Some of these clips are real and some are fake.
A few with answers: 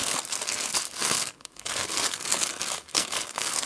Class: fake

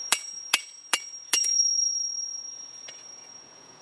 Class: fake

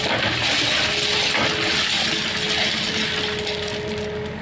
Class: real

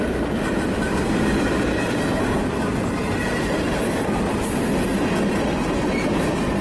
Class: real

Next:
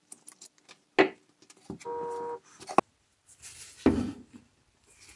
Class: real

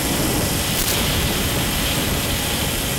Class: fake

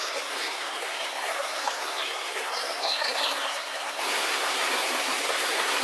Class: fake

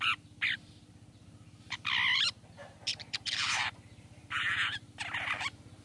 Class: fake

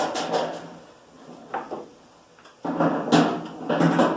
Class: real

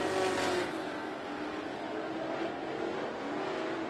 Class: real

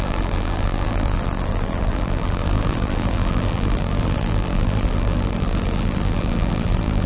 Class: fake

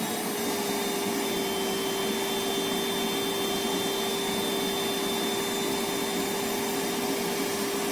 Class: real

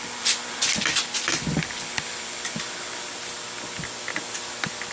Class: real